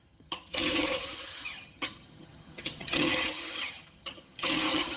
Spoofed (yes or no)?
yes